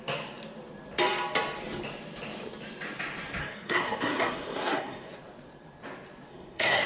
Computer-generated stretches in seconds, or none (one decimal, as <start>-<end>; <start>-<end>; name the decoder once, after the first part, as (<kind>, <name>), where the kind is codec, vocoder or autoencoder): 3.4-5.1 (codec, SNAC); 6.3-6.9